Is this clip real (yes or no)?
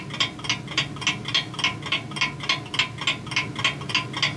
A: yes